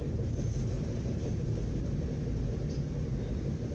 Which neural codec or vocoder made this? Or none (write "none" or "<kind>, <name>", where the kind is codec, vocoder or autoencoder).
none